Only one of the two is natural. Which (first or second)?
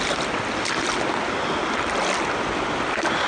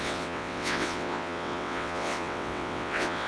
first